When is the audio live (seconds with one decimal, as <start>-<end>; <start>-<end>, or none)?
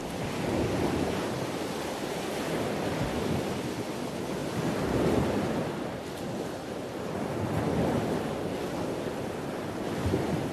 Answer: 0.0-10.5